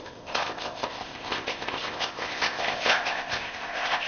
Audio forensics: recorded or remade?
remade